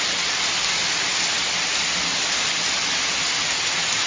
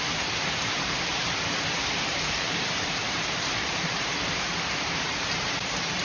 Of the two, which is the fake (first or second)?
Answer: second